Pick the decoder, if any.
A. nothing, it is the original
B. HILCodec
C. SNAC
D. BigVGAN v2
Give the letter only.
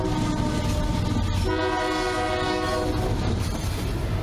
A